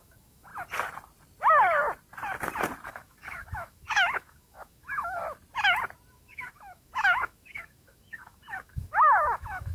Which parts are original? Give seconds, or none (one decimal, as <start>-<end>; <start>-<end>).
0.5-2.9; 5.2-6.1